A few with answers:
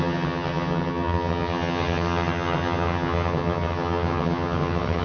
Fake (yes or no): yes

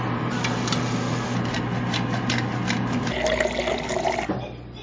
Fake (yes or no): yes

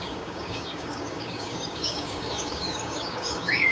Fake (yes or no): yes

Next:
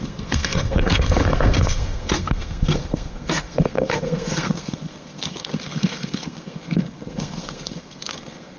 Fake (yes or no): yes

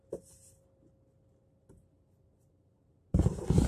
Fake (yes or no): no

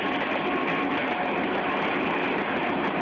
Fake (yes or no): no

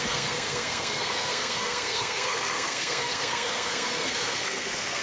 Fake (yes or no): yes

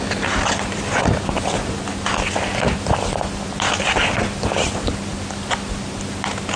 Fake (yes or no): no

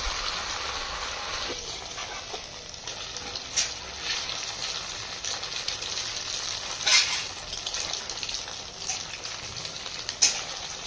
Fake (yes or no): no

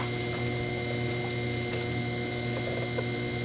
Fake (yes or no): no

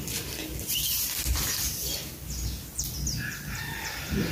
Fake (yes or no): no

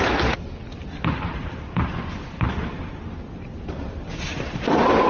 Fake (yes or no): no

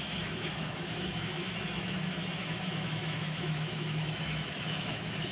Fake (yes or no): yes